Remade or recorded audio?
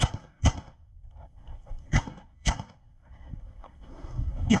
remade